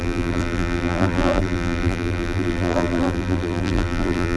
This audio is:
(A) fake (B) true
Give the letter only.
A